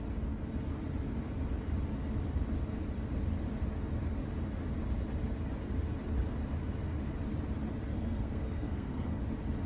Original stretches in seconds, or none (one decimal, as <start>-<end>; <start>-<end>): 0.0-7.9; 9.2-9.7